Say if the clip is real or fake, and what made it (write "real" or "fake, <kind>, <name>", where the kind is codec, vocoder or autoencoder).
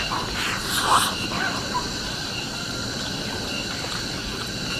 real